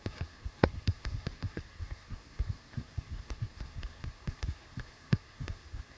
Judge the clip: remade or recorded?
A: remade